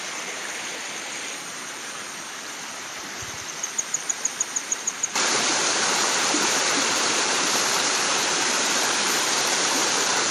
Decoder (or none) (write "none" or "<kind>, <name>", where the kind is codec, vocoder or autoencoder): vocoder, BigVGAN v2